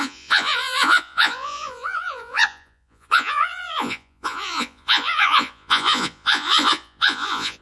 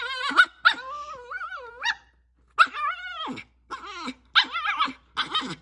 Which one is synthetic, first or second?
first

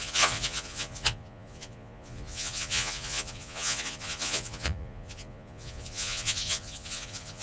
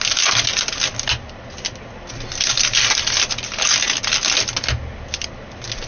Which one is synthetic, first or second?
first